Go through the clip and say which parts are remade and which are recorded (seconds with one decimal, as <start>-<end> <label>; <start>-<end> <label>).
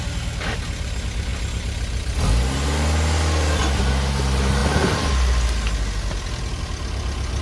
0.0-7.4 recorded